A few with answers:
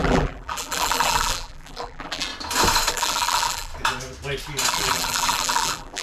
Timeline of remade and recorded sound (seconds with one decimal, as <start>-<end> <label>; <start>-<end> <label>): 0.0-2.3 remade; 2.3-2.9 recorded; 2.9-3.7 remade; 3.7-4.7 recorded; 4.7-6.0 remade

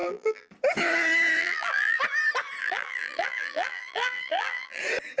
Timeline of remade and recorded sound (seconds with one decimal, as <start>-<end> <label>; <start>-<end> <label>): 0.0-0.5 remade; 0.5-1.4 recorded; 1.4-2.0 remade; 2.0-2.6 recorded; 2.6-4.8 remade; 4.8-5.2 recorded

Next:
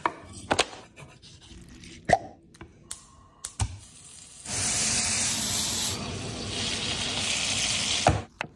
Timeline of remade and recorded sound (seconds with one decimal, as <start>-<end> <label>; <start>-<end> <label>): 0.0-8.6 recorded

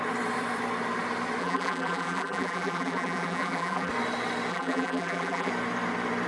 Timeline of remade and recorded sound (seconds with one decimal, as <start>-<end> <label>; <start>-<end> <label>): 0.0-1.4 recorded; 1.4-3.9 remade; 3.9-4.5 recorded; 4.5-5.5 remade; 5.5-6.3 recorded

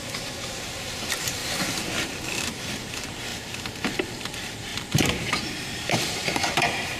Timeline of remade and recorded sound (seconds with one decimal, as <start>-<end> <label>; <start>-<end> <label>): 0.0-1.4 remade; 1.4-2.0 recorded; 2.0-7.0 remade

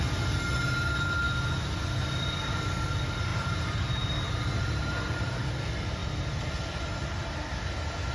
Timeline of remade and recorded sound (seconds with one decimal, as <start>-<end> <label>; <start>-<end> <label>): 0.0-3.3 recorded; 3.3-5.5 remade; 5.5-8.1 recorded

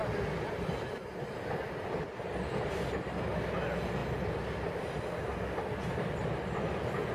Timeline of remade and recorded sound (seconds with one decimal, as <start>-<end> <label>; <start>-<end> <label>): 0.0-7.1 recorded

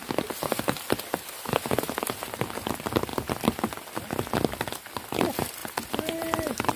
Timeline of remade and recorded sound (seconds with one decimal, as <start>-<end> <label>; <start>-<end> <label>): 0.0-5.6 recorded; 5.6-6.8 remade